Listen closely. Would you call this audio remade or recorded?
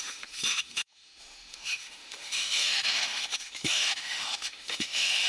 remade